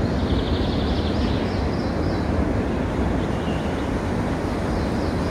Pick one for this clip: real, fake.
real